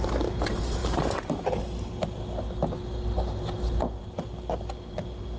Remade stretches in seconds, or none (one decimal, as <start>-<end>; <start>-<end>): none